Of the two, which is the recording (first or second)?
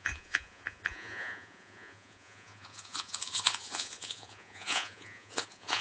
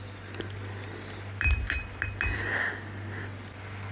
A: second